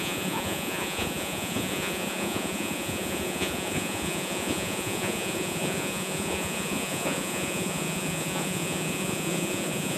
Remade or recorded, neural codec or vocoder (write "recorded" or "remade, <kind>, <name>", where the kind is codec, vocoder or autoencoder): remade, vocoder, Vocos